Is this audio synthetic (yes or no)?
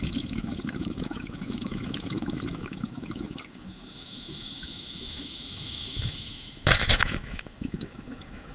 yes